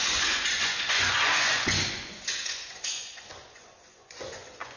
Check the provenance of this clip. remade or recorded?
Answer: remade